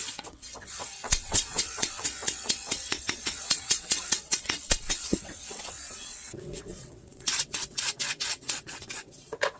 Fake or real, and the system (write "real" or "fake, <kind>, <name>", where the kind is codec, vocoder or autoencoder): fake, vocoder, WaveNeXt